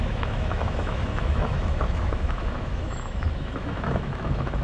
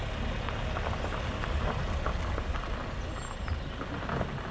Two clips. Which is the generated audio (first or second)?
first